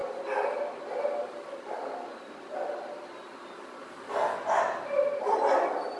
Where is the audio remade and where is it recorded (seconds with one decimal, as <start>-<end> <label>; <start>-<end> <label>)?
0.0-6.0 recorded